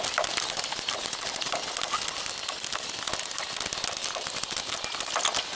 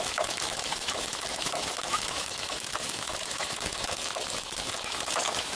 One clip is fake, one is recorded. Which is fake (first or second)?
second